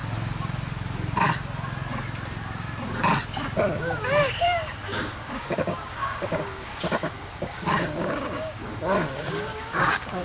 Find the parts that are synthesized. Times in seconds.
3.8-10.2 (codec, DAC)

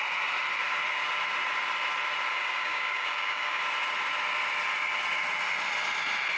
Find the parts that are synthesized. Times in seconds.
2.3-3.6 (codec, DAC)

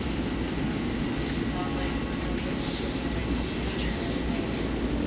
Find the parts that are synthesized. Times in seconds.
none

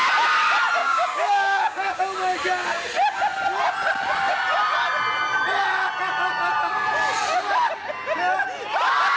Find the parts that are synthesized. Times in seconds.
0.8-2.0 (codec, DAC)

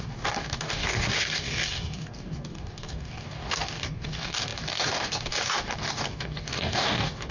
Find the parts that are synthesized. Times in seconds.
0.0-7.3 (codec, DAC)

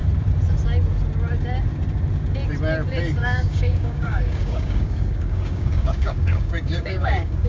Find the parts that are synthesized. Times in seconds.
3.2-7.5 (codec, DAC)